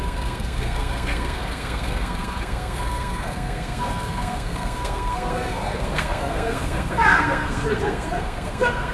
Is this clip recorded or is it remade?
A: remade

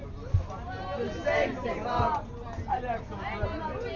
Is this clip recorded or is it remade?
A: recorded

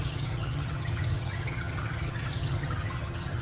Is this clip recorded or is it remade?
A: remade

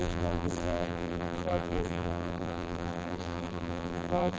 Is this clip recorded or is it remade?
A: remade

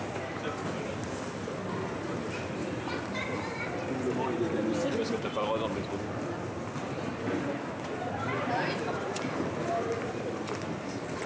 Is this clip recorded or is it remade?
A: remade